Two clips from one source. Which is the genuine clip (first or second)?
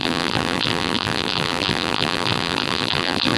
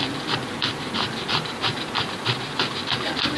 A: second